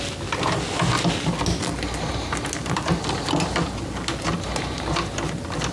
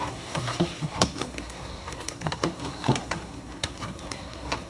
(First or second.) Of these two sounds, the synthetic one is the second